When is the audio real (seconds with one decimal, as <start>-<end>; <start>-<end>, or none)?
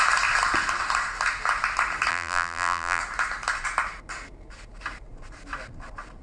0.0-2.1; 3.0-6.2